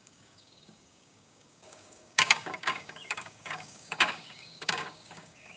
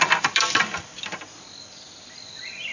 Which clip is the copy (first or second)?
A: first